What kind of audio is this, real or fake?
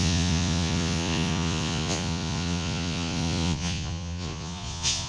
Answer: fake